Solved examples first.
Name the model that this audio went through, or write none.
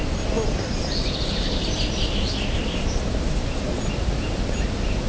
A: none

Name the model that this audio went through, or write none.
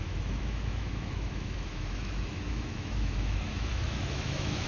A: autoencoder, DAC-VAE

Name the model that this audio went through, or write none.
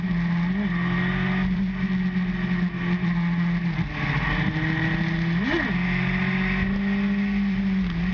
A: none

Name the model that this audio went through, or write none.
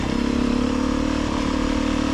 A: none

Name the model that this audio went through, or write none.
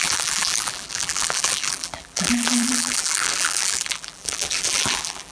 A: vocoder, BigVGAN v2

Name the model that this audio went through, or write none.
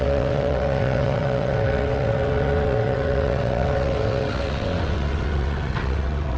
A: vocoder, WaveNeXt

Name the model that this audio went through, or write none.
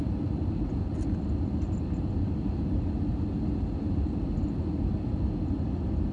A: none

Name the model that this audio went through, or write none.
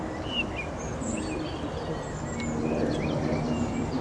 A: none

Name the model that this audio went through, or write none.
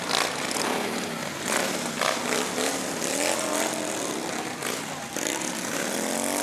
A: none